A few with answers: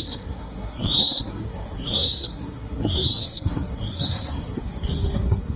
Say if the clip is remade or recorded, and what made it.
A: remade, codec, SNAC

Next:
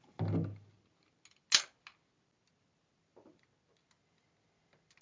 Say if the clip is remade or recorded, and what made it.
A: recorded